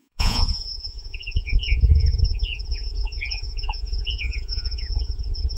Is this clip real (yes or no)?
no